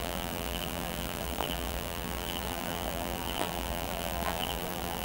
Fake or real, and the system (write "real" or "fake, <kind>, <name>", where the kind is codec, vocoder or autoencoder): fake, vocoder, BigVGAN v2